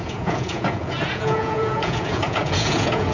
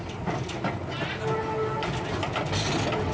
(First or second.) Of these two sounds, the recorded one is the second